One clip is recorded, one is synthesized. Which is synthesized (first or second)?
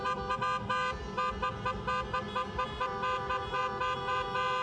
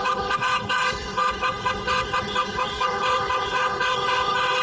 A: second